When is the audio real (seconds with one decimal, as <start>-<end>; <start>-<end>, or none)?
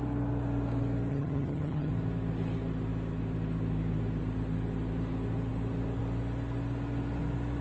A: 0.0-1.1; 1.9-7.6